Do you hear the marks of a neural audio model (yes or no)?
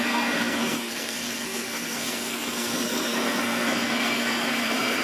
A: yes